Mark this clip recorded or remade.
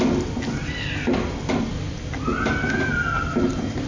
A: recorded